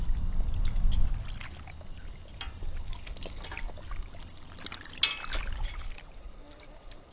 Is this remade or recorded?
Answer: recorded